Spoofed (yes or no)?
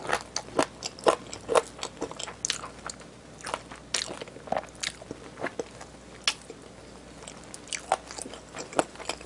no